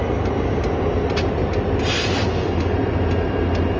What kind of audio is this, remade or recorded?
recorded